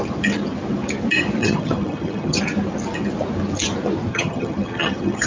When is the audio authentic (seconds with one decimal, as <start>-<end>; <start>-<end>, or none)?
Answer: 0.0-1.4; 2.4-4.1